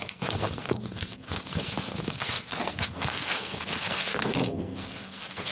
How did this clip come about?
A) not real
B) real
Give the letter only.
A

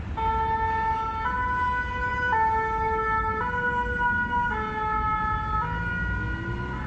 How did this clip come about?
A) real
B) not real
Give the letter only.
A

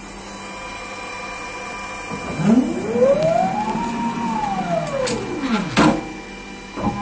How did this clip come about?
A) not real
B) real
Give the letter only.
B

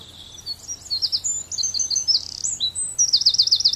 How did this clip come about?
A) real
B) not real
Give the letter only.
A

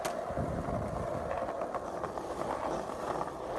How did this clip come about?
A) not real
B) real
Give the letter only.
B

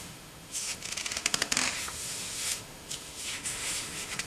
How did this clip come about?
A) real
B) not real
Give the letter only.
B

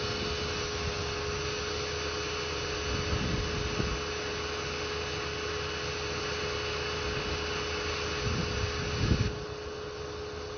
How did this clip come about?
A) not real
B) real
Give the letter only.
B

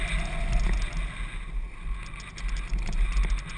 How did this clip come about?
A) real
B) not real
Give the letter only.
A